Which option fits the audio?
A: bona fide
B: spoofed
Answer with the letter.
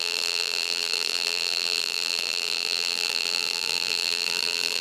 B